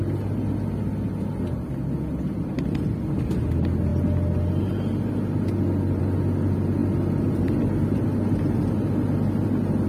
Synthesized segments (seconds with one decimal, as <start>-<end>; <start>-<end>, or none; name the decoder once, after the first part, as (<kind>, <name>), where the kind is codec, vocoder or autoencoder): none